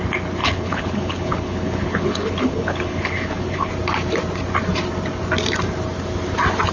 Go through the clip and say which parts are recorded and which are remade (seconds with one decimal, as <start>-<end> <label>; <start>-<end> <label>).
0.0-0.4 recorded; 0.4-3.7 remade; 3.7-6.7 recorded